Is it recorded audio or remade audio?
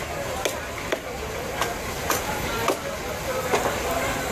recorded